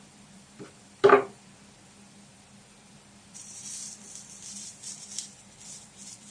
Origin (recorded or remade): remade